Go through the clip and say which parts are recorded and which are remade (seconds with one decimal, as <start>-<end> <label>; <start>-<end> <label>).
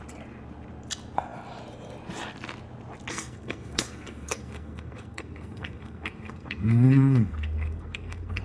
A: 0.0-3.1 recorded; 3.1-8.4 remade